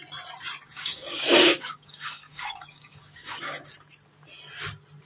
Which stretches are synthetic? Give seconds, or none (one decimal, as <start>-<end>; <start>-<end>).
0.6-3.7